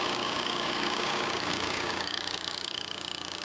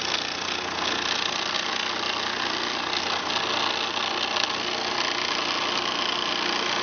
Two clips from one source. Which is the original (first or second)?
second